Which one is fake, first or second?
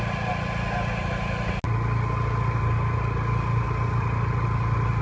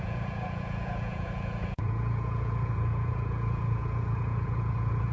second